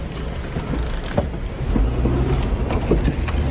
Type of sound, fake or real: real